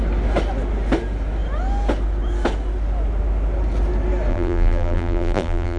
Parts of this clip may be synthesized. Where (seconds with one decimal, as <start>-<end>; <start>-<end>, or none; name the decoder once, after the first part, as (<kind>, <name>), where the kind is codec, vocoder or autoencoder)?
4.3-5.8 (vocoder, BigVGAN v2)